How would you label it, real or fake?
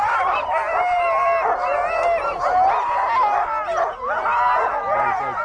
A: real